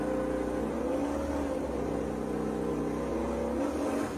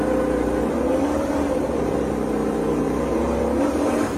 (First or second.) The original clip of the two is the first